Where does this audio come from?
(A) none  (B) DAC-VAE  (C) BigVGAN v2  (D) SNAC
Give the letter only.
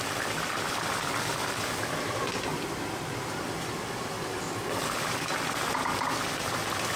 C